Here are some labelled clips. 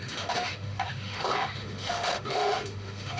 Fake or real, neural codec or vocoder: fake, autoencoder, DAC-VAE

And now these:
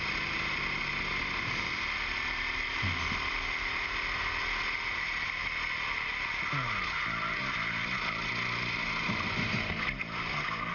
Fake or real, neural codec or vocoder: real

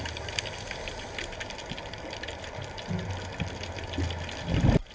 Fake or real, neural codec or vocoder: real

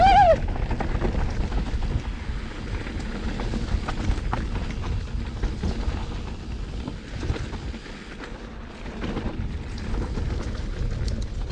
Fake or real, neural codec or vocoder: real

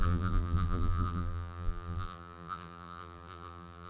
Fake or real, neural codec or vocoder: fake, vocoder, BigVGAN v2